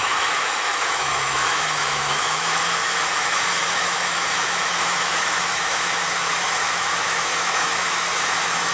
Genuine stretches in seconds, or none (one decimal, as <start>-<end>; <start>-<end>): none